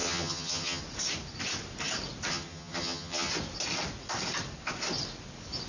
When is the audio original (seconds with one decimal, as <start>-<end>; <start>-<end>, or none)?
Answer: 0.8-2.3; 3.3-5.7

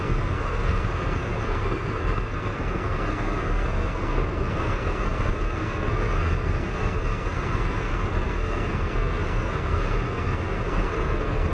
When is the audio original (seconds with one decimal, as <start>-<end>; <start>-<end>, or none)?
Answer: none

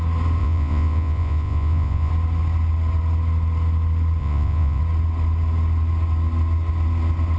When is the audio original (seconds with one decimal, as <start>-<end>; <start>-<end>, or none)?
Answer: 0.0-0.4; 2.1-4.2; 4.8-7.4

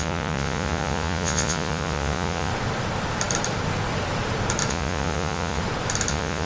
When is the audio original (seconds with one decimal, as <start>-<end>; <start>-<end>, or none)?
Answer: 2.5-4.7; 5.6-6.1

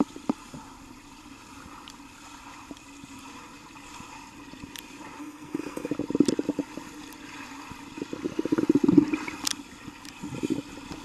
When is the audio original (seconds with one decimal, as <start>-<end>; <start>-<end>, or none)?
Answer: 0.0-5.2; 5.9-11.0